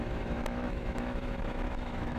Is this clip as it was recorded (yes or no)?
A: no